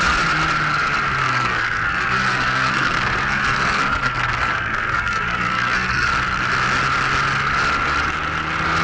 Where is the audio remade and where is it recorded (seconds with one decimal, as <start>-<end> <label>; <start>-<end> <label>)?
0.0-1.2 recorded; 1.2-6.1 remade; 6.1-8.8 recorded